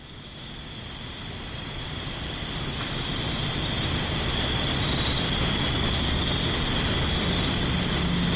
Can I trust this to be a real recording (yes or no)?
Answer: yes